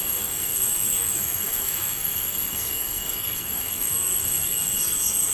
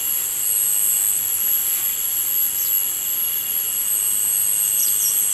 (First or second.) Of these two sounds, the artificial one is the first